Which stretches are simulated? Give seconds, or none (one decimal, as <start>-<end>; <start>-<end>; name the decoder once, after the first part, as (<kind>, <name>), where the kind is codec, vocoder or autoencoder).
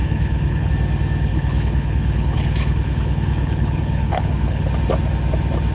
0.0-0.7 (codec, HILCodec); 1.3-4.7